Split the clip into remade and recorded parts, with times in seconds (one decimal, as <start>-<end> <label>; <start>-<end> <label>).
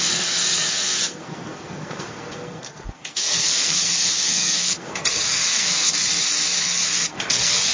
0.0-5.9 remade; 5.9-6.6 recorded; 6.6-7.7 remade